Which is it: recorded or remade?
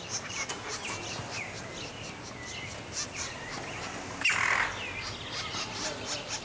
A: recorded